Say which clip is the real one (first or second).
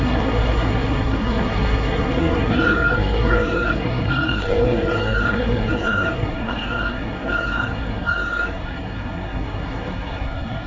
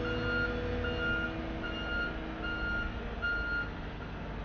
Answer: second